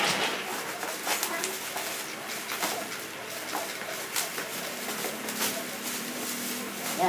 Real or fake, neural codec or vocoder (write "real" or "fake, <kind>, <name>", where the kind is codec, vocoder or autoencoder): real